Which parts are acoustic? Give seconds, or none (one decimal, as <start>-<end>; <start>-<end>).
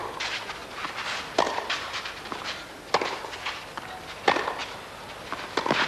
0.0-4.6; 5.1-5.9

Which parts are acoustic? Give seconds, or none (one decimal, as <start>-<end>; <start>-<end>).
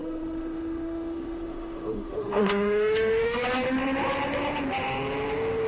3.4-5.7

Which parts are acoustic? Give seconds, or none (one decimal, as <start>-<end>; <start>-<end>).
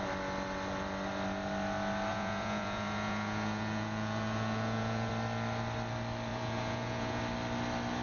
0.0-2.1; 5.1-6.3; 7.2-8.0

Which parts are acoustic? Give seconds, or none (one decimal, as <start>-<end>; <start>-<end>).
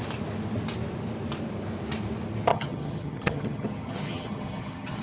0.0-2.5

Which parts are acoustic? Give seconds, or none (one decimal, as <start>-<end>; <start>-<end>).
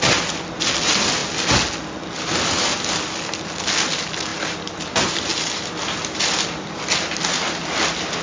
0.0-8.2